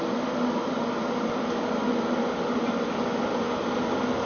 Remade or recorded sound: recorded